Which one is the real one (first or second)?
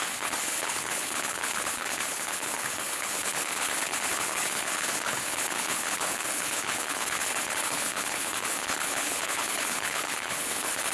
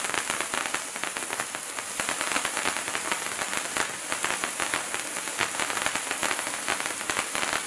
second